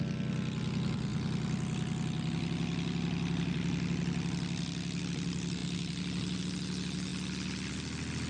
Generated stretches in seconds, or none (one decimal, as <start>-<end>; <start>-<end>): none